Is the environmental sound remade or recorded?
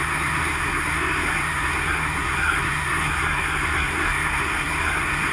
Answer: remade